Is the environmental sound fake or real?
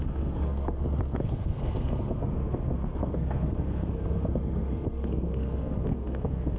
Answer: fake